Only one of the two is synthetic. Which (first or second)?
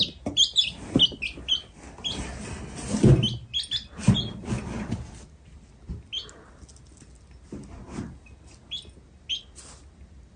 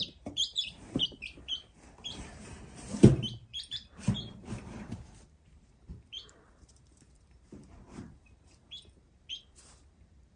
second